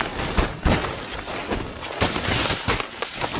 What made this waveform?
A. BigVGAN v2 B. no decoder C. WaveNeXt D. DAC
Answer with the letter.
B